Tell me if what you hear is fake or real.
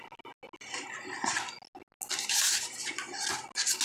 real